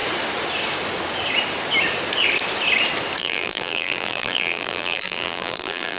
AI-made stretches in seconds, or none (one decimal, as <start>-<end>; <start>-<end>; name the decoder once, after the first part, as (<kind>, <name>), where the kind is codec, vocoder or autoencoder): 3.2-6.0 (vocoder, BigVGAN v2)

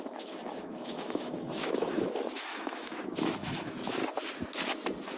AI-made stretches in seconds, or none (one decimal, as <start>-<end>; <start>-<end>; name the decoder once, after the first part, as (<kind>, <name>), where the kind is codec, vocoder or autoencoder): 0.0-4.0 (autoencoder, DAC-VAE)

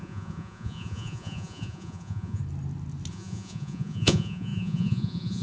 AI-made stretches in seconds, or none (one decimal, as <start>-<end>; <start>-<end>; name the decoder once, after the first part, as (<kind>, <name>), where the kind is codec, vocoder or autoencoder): 0.0-2.4 (vocoder, Vocos); 3.1-5.4